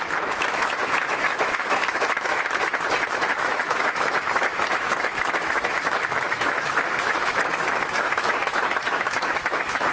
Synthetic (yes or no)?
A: yes